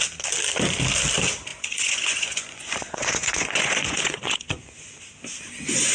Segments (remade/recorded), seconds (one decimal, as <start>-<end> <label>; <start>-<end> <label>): 0.0-1.5 recorded; 1.5-5.0 remade; 5.0-5.9 recorded